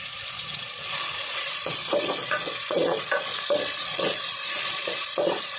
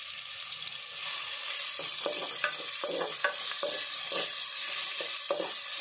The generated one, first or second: first